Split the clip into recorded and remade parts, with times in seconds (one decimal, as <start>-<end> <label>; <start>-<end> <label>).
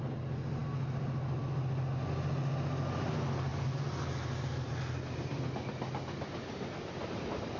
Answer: 0.0-7.6 recorded